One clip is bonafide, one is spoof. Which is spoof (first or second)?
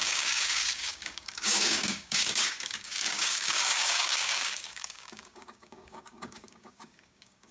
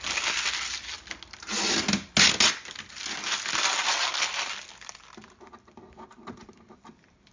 first